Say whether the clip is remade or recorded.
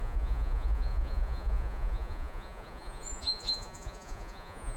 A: remade